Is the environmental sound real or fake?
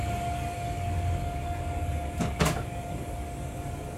fake